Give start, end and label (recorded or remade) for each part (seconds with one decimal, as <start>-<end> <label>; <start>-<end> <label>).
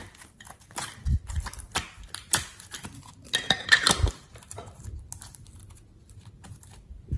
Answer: 0.0-7.2 recorded